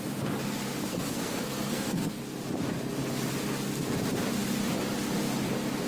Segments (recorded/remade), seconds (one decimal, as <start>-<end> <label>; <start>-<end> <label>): 0.0-0.9 recorded; 0.9-2.2 remade; 2.2-5.9 recorded